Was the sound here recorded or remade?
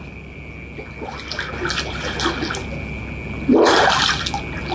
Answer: recorded